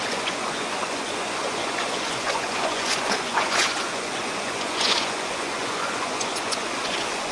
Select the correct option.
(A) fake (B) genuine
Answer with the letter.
A